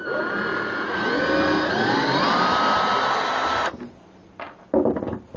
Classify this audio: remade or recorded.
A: recorded